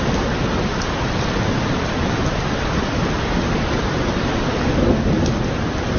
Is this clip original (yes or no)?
yes